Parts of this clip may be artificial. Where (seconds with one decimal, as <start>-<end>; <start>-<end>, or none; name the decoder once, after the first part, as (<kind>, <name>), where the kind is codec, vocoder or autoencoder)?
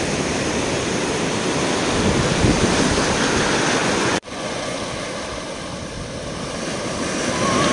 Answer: 3.8-4.8 (vocoder, Vocos)